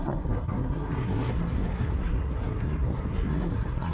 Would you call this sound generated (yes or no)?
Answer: yes